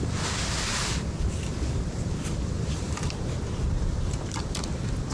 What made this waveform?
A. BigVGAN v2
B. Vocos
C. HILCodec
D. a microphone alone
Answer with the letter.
A